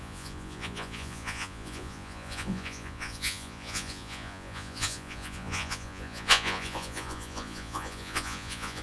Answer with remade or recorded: remade